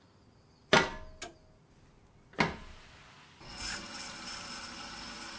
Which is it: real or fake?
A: real